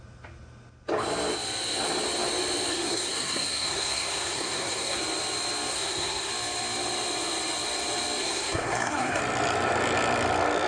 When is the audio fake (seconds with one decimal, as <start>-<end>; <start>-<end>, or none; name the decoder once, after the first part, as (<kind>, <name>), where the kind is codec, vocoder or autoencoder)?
2.7-5.0 (codec, SNAC); 5.7-6.3; 8.2-9.2